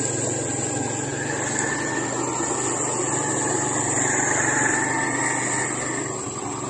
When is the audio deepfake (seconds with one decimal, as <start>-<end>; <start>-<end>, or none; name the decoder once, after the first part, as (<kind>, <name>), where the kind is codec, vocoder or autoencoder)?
none